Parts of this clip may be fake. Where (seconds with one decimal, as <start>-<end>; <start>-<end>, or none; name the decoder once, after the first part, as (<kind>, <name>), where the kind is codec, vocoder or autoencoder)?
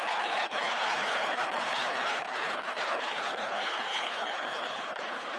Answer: 0.0-5.4 (codec, HILCodec)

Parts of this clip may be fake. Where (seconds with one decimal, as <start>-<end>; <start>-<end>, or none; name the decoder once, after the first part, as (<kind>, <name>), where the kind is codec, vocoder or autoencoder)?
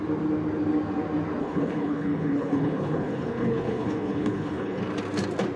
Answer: 1.4-4.8 (codec, HILCodec)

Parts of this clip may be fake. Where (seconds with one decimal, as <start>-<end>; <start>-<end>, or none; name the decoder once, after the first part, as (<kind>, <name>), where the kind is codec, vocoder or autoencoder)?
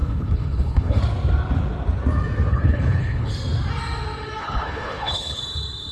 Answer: 0.0-1.0 (codec, HILCodec); 2.5-3.3; 4.4-5.4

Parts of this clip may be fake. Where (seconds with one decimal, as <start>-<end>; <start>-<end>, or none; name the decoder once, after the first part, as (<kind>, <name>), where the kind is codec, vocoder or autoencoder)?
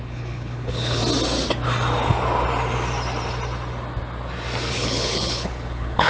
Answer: 0.0-1.0 (codec, HILCodec); 4.7-6.1